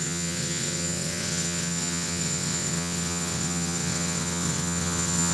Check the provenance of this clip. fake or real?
fake